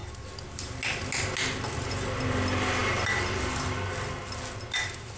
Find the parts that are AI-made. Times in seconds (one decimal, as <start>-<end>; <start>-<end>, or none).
none